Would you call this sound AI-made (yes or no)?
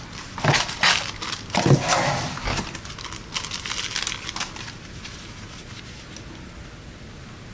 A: no